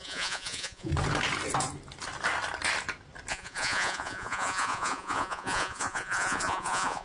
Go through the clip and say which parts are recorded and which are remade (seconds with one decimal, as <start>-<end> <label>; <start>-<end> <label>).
0.0-0.9 remade; 0.9-3.3 recorded; 3.3-7.0 remade